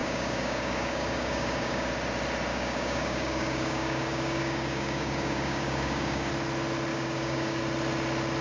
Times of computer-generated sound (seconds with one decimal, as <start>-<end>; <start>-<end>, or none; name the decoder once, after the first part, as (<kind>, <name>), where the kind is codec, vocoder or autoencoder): 0.0-1.9 (codec, DAC); 2.5-6.3; 6.9-7.6